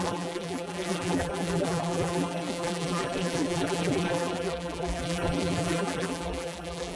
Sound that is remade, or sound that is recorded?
remade